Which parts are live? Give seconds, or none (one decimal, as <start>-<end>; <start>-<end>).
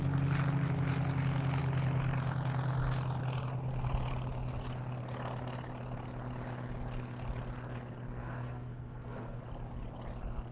0.0-8.2; 9.4-10.5